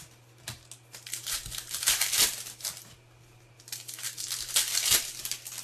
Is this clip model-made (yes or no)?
no